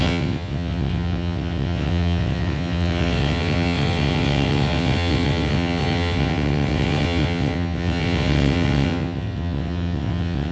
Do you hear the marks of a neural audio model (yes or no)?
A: yes